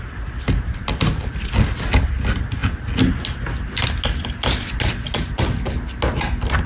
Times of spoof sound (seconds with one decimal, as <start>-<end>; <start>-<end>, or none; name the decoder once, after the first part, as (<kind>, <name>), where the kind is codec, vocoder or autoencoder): none